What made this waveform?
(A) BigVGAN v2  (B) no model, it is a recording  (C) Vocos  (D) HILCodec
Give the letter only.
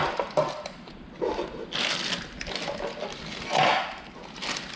B